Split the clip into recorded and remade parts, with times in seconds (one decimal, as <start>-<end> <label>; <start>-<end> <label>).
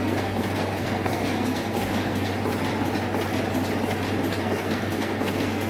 0.0-2.3 remade; 2.3-4.3 recorded; 4.3-5.7 remade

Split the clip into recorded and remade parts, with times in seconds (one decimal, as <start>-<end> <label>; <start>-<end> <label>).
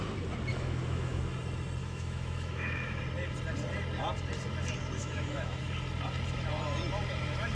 0.0-0.5 recorded; 0.5-1.2 remade; 1.2-1.8 recorded; 1.8-3.0 remade; 3.0-5.0 recorded; 5.0-5.6 remade; 5.6-7.5 recorded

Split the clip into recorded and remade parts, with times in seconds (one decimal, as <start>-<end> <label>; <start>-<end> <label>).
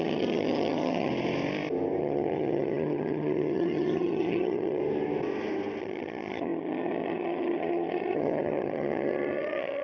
0.0-1.1 remade; 1.1-2.0 recorded; 2.0-4.8 remade; 4.8-5.8 recorded; 5.8-9.8 remade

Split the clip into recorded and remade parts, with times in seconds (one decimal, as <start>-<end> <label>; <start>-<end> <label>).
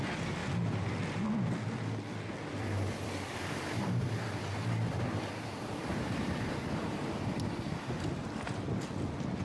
0.0-0.4 remade; 0.4-2.5 recorded; 2.5-8.2 remade; 8.2-9.4 recorded